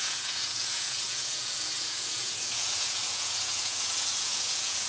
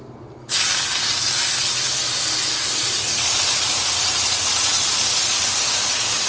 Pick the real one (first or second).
second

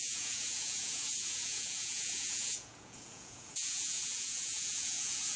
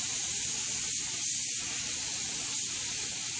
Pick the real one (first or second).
second